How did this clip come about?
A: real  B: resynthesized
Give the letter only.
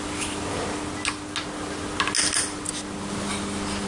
A